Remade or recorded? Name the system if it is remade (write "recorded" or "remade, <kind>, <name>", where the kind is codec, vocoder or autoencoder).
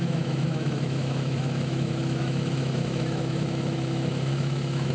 remade, autoencoder, DAC-VAE